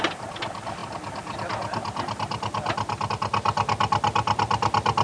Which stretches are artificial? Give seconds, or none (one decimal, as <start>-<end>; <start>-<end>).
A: none